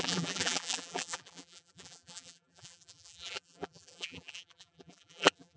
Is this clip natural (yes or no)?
no